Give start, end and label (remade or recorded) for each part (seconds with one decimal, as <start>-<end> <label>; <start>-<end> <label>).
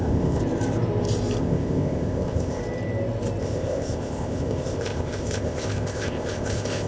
0.0-0.4 remade; 0.4-1.4 recorded; 1.4-2.6 remade; 2.6-3.4 recorded; 3.4-6.9 remade